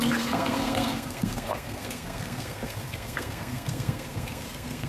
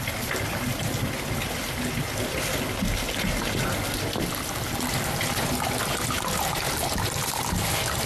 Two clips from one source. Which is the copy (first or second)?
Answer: first